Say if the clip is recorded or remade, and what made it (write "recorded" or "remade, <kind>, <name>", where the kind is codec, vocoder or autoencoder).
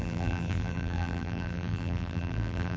remade, vocoder, BigVGAN v2